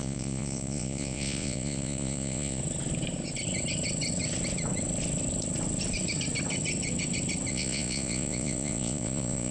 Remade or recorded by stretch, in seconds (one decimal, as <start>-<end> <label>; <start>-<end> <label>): 0.0-2.6 remade; 2.6-7.5 recorded; 7.5-9.5 remade